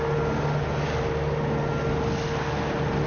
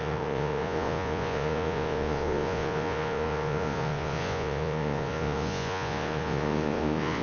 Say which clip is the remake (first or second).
second